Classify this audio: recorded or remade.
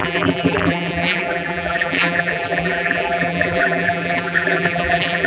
remade